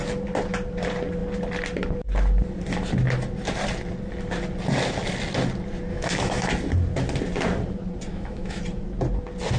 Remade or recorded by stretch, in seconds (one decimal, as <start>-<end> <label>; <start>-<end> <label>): 0.0-5.9 recorded; 5.9-6.5 remade; 6.5-8.1 recorded; 8.1-8.6 remade; 8.6-9.6 recorded